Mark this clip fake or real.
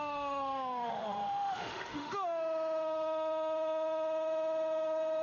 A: fake